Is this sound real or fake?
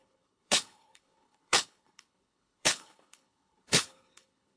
fake